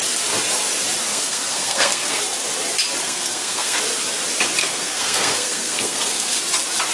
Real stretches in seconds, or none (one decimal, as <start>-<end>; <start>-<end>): 0.0-1.1; 2.2-3.0; 3.8-4.6; 6.4-6.9